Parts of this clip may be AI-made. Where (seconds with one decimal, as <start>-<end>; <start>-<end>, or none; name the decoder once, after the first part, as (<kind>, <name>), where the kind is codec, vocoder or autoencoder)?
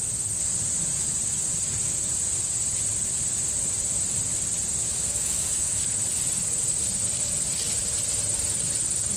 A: 4.8-5.8 (autoencoder, DAC-VAE)